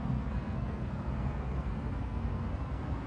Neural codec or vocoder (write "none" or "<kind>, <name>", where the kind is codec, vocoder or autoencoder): codec, SNAC